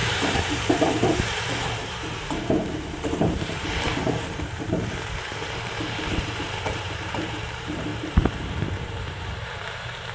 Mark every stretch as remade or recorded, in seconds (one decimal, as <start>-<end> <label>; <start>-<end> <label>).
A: 0.0-10.1 remade